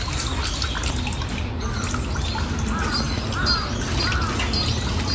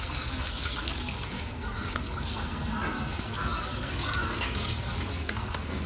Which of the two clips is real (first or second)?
first